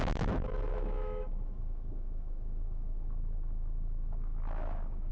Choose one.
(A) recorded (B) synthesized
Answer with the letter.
B